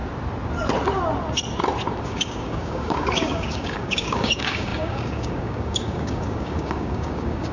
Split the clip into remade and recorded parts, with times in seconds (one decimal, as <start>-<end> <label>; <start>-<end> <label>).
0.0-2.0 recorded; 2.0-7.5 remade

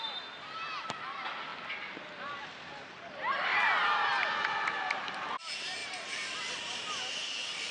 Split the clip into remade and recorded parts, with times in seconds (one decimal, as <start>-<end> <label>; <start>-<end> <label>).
0.0-3.5 recorded; 3.5-5.3 remade; 5.3-5.8 recorded; 5.8-6.4 remade; 6.4-7.7 recorded

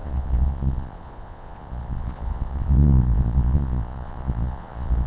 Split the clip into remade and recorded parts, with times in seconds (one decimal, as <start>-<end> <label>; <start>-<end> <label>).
0.0-5.1 remade

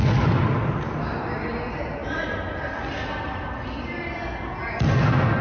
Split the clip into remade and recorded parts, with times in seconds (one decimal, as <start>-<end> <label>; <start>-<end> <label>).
0.0-5.4 recorded

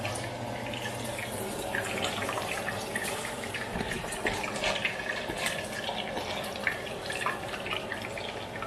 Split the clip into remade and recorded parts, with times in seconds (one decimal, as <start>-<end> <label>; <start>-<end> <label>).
0.0-2.2 recorded; 2.2-4.1 remade; 4.1-6.5 recorded; 6.5-7.9 remade; 7.9-8.7 recorded

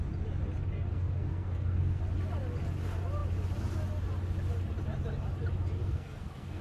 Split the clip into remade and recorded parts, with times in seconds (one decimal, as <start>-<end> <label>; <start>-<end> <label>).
0.0-0.9 recorded; 0.9-2.0 remade; 2.0-5.8 recorded; 5.8-6.6 remade

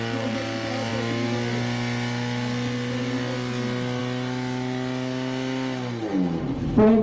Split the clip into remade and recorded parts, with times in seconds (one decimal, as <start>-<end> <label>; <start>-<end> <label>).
0.0-7.0 recorded

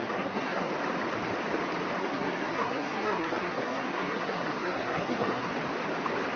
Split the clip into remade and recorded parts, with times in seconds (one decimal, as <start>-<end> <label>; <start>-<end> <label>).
0.0-0.7 remade; 0.7-2.0 recorded; 2.0-5.5 remade; 5.5-6.4 recorded